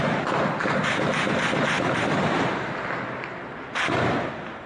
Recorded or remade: recorded